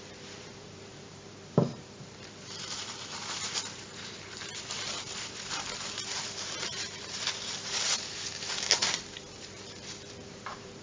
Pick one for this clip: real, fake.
fake